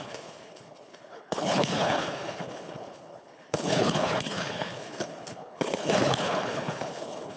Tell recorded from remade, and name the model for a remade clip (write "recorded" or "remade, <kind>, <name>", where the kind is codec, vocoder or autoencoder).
remade, codec, HILCodec